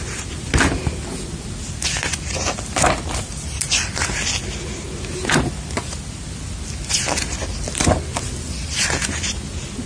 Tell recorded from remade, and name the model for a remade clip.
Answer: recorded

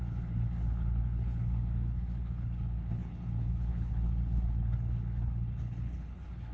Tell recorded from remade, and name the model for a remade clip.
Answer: remade, codec, HILCodec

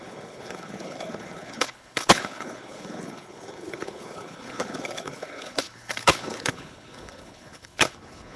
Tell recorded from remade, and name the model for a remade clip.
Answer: remade, codec, HILCodec